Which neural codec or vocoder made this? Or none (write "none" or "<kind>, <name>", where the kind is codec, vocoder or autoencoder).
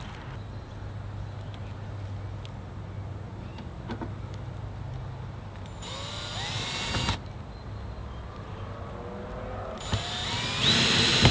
none